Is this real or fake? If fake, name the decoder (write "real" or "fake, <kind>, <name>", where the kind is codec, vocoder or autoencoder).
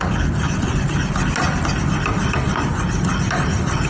real